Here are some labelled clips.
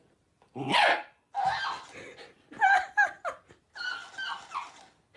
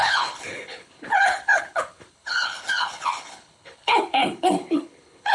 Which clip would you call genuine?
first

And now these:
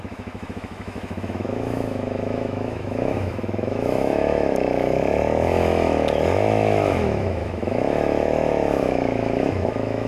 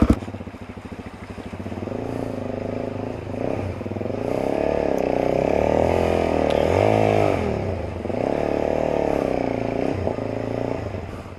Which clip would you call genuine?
second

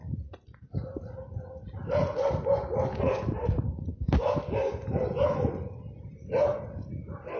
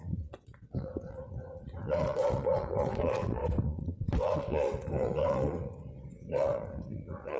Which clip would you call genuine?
first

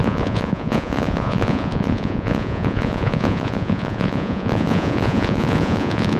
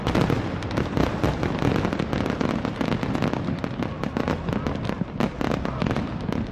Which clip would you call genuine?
second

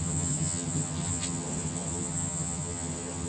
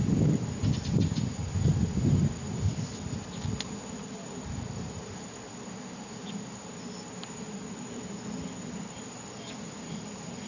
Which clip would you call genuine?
second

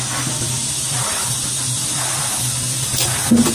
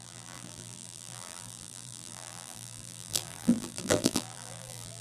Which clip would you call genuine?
first